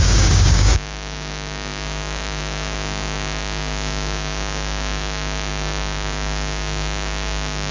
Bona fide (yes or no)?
no